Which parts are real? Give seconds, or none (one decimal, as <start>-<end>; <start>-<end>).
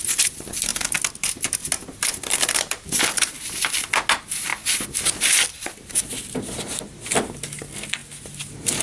0.0-8.8